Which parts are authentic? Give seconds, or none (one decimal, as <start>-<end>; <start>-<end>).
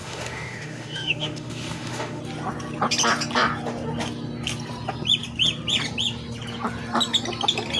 2.2-7.8